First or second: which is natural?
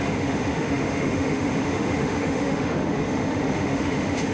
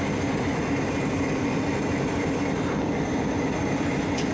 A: second